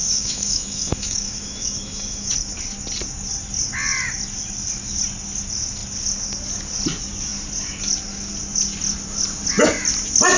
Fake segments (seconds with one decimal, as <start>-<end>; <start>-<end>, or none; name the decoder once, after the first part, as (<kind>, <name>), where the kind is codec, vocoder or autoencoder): 0.0-2.3 (autoencoder, DAC-VAE)